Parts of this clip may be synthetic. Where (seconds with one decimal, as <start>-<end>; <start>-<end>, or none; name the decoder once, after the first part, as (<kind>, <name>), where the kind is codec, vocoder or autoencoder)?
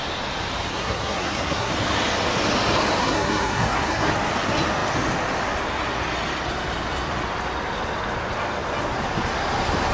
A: 0.7-1.7 (codec, SNAC); 3.0-4.1